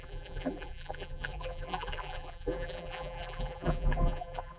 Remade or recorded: remade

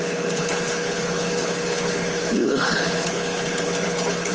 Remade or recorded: remade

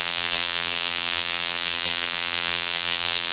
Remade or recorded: remade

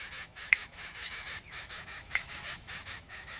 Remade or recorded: remade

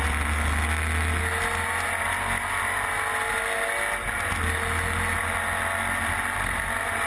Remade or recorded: recorded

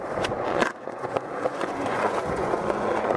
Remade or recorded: remade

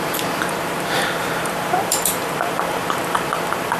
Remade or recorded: remade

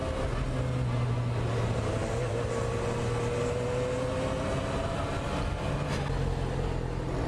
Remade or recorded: recorded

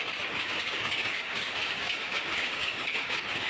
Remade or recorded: remade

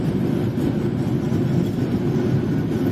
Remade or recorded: recorded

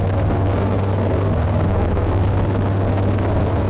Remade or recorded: remade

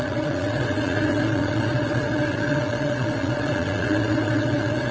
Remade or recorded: remade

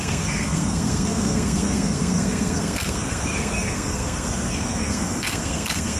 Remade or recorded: remade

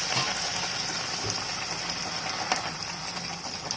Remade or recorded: recorded